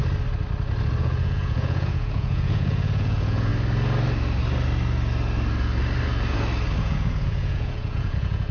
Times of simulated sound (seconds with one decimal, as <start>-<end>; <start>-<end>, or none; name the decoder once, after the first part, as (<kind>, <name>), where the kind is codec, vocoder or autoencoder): 1.0-3.5 (vocoder, Vocos); 6.8-8.5